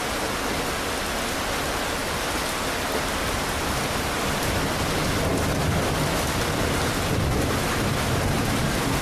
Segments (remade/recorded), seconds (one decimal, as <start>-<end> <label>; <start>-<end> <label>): 0.0-2.0 recorded; 2.0-7.1 remade; 7.1-9.0 recorded